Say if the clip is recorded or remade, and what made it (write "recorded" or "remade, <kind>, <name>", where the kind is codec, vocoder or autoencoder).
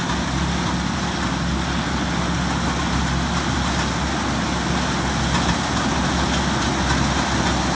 recorded